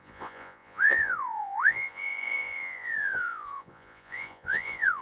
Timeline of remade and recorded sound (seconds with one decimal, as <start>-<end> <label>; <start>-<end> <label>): 0.0-5.0 remade